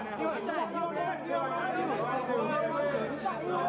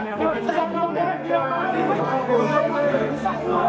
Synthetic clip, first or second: second